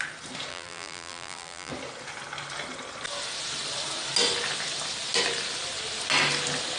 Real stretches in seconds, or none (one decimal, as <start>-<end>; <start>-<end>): 0.0-0.5; 1.7-6.8